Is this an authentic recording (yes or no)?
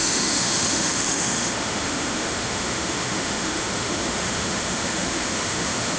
no